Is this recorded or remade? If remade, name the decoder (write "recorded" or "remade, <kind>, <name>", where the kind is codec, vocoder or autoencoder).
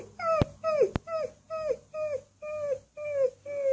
recorded